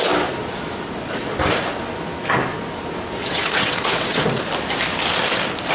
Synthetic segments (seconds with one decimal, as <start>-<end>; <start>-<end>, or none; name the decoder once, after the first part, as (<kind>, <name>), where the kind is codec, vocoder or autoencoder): 3.2-4.4 (vocoder, WaveNeXt)